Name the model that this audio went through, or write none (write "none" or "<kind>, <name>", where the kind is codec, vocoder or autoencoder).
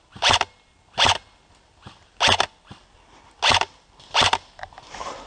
none